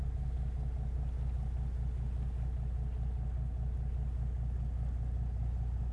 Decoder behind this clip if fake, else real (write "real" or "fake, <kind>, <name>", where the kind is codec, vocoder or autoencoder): real